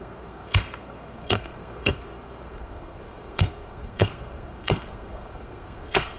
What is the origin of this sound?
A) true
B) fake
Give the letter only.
B